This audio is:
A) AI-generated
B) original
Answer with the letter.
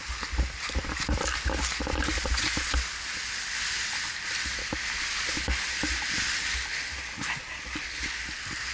B